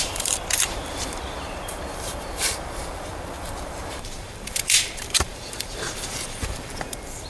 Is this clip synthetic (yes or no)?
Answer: yes